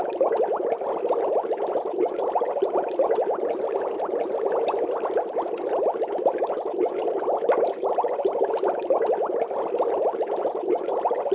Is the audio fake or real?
real